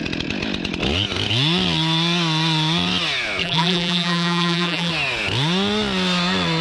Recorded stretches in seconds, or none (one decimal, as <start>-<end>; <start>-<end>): 0.0-3.4; 4.9-6.6